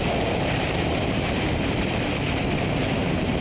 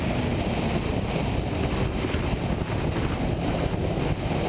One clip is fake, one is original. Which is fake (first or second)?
first